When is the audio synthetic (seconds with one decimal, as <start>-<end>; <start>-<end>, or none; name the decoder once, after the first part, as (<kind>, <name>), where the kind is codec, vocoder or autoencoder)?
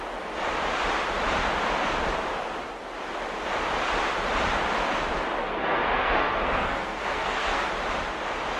5.4-7.7 (codec, SNAC)